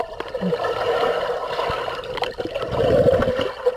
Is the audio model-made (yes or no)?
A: no